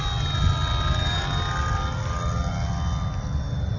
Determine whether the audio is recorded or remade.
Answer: recorded